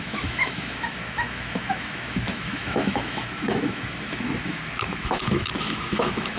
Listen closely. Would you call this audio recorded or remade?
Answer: remade